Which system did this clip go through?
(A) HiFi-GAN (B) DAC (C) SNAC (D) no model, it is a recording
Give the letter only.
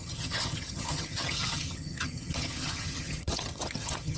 A